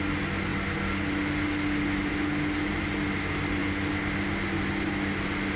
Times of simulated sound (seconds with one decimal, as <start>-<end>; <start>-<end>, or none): none